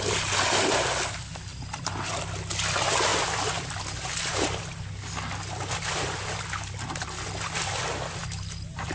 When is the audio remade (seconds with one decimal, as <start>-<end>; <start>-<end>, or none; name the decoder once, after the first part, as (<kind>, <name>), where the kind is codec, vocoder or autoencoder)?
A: none